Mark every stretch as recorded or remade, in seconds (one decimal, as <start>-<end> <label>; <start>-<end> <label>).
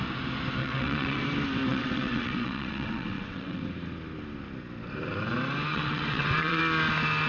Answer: 0.0-0.6 recorded; 0.6-1.2 remade; 1.2-1.7 recorded; 1.7-3.6 remade; 3.6-5.7 recorded; 5.7-6.6 remade; 6.6-7.3 recorded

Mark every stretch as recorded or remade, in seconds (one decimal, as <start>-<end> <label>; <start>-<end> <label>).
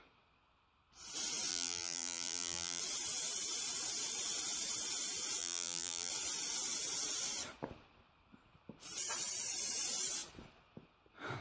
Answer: 0.0-1.5 recorded; 1.5-2.8 remade; 2.8-5.4 recorded; 5.4-6.1 remade; 6.1-11.4 recorded